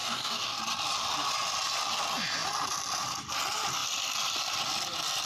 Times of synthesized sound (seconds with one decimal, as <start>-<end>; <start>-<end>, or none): 0.0-0.6